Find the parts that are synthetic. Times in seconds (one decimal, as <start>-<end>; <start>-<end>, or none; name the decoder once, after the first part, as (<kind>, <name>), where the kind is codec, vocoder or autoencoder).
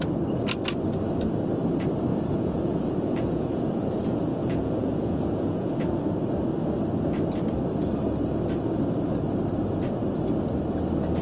2.1-5.8 (vocoder, Vocos)